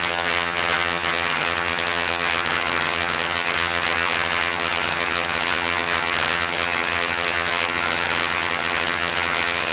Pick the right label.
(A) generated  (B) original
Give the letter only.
A